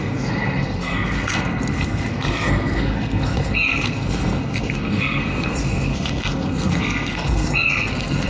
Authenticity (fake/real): fake